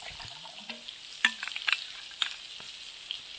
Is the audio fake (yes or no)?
no